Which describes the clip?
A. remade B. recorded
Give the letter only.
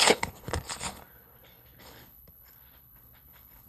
A